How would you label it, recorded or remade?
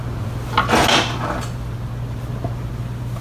recorded